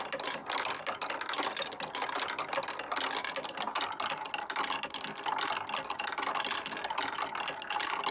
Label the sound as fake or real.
real